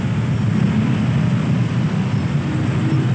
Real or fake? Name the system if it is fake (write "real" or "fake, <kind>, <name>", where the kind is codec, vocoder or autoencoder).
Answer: real